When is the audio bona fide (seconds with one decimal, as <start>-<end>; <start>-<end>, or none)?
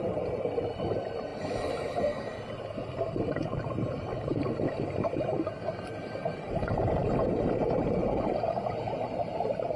1.3-3.1; 4.3-6.3